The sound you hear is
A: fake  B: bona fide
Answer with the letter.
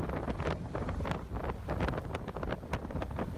B